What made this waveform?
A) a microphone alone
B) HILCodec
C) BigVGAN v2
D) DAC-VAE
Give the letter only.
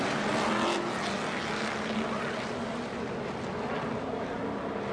A